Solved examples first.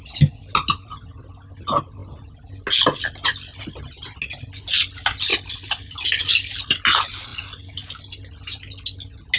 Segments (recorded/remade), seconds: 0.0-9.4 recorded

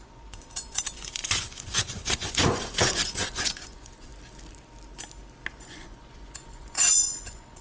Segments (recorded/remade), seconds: 0.0-4.1 remade; 4.1-5.5 recorded; 5.5-7.6 remade

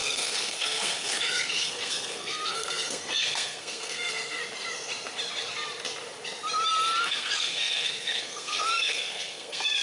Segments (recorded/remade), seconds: 0.0-4.4 remade; 4.4-7.0 recorded; 7.0-9.8 remade